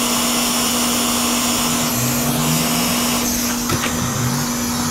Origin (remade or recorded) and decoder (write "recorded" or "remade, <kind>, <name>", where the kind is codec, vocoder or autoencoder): recorded